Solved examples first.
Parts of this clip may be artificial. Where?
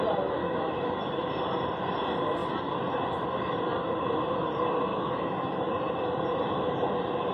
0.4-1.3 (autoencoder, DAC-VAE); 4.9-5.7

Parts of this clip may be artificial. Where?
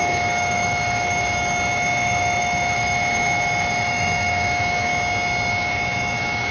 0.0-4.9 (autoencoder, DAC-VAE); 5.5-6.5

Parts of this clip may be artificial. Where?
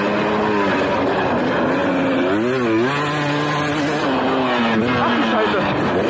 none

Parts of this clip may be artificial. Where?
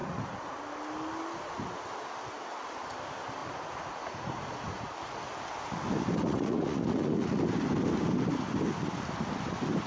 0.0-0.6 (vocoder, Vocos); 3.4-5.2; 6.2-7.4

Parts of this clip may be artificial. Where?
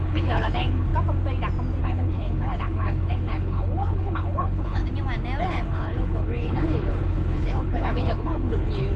0.0-0.9 (codec, HILCodec); 1.8-4.8; 5.4-9.0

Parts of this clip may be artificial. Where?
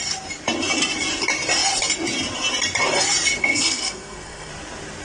3.4-4.5 (codec, SNAC)